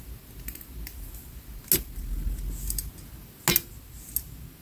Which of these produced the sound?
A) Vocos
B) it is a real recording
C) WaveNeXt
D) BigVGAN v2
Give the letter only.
B